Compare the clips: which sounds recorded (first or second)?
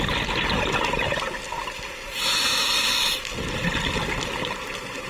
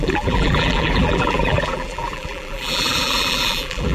first